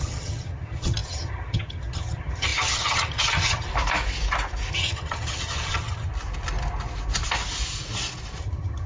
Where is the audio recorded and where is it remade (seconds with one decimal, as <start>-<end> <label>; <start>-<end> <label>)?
0.0-3.7 remade; 3.7-4.7 recorded; 4.7-6.1 remade; 6.1-8.4 recorded; 8.4-8.9 remade